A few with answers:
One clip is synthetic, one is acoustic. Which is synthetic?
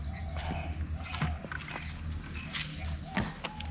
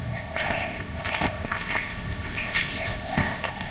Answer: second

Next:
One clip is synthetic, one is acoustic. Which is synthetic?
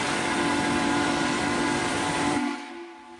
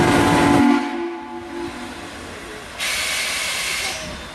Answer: first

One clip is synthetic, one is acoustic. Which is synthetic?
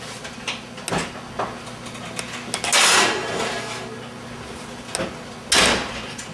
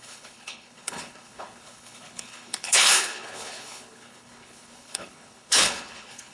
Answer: second